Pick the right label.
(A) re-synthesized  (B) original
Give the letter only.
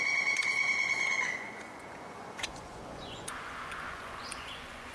A